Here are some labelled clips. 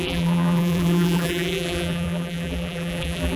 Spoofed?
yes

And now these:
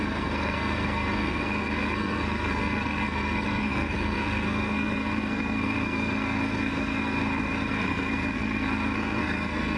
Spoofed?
yes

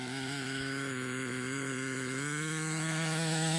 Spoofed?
yes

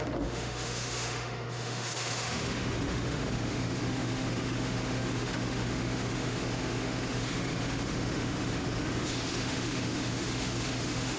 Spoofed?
yes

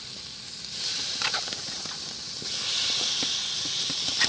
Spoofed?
no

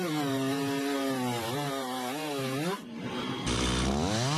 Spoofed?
no